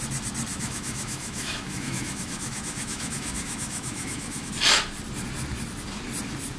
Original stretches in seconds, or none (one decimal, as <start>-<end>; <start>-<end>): 0.0-0.5; 4.5-6.6